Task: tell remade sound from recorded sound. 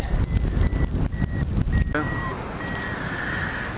recorded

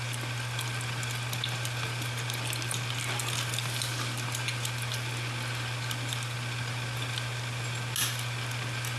recorded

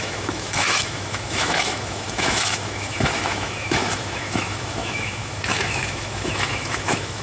remade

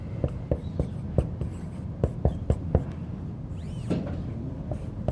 recorded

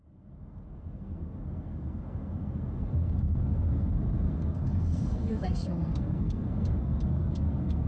remade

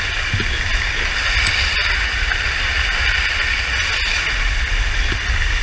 recorded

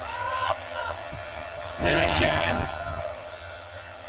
remade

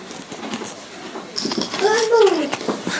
recorded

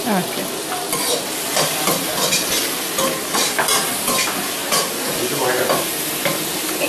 recorded